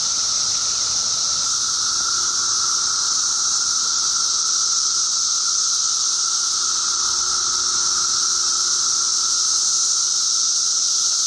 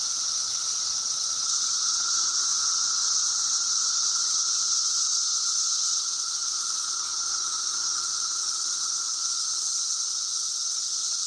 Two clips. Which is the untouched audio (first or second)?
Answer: first